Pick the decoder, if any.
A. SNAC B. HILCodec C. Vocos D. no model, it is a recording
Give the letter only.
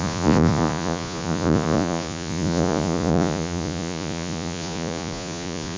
C